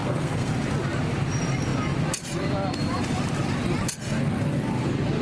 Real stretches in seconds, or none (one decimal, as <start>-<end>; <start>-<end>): 0.5-5.2